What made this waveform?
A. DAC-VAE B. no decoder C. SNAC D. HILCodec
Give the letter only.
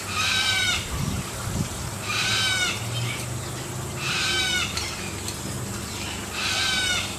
B